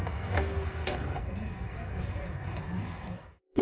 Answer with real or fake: fake